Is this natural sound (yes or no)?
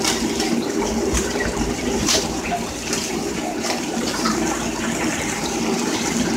no